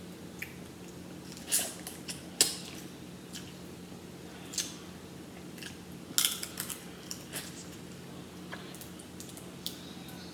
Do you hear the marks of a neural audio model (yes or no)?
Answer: no